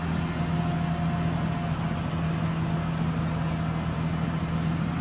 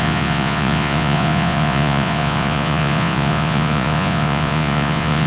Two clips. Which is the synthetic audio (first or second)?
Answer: second